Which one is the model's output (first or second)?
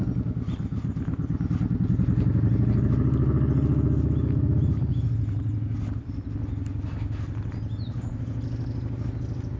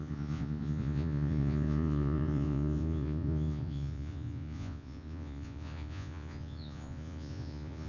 second